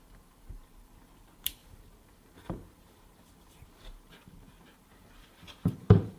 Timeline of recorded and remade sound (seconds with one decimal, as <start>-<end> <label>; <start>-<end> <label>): 0.0-6.2 remade